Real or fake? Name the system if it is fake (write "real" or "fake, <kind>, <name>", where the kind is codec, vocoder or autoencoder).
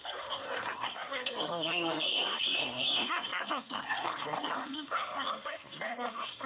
fake, codec, SNAC